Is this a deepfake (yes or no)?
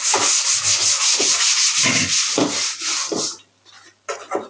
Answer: no